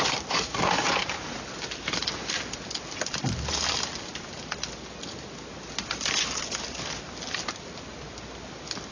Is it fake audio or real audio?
real